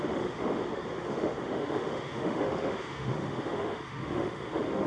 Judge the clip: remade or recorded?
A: remade